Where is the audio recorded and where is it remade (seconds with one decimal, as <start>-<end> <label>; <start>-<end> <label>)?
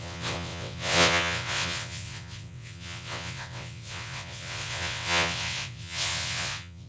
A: 0.0-6.9 remade